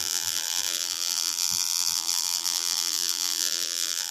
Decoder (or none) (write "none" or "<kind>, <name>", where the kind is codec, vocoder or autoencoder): vocoder, BigVGAN v2